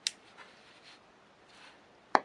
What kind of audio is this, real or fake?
real